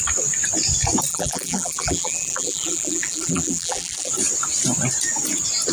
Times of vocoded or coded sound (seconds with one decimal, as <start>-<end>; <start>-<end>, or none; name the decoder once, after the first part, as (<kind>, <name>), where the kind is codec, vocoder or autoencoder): 1.1-4.1 (vocoder, BigVGAN v2)